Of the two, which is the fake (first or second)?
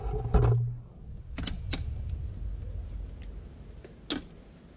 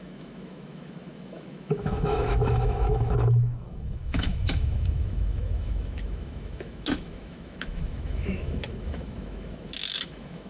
second